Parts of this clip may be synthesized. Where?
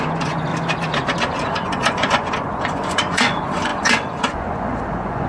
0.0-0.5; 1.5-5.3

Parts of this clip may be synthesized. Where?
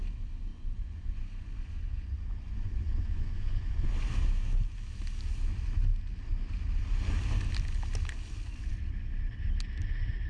0.5-3.9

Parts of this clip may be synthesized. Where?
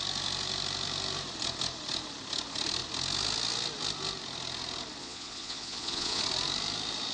5.0-6.2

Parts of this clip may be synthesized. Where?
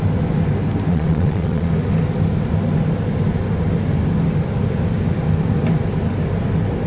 0.9-1.7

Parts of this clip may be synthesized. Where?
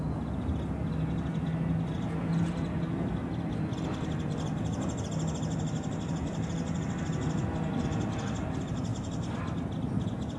none